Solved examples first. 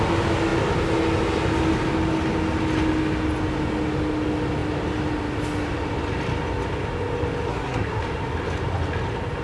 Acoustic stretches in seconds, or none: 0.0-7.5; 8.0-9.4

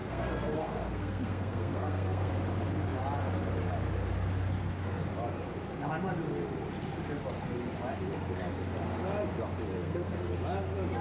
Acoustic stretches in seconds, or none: 2.3-9.7; 10.3-11.0

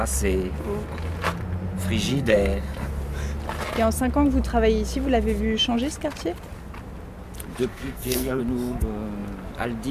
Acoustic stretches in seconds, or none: 0.0-2.1; 2.9-7.7; 8.4-9.9

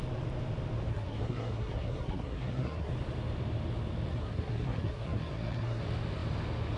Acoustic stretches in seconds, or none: 0.0-0.9; 2.9-4.1; 5.8-6.8

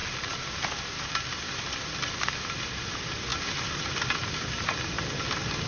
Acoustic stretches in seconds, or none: 0.0-5.7

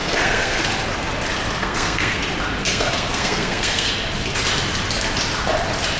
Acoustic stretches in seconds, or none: 0.6-1.6; 2.2-2.6; 3.9-6.0

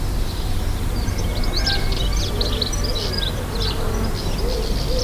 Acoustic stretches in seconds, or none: 0.0-5.0

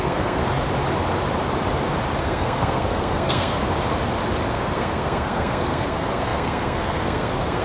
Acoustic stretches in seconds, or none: 0.4-2.2; 3.6-4.5